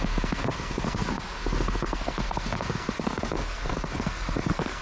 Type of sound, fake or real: fake